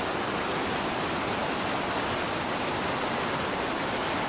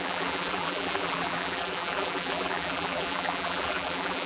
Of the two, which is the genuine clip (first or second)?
first